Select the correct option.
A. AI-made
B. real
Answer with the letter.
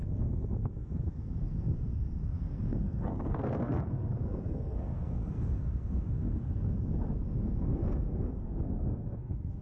A